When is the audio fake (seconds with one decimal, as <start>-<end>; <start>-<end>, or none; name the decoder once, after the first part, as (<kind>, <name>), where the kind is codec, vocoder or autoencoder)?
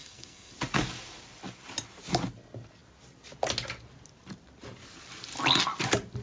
0.0-0.5 (codec, SNAC)